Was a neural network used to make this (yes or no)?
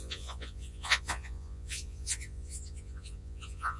yes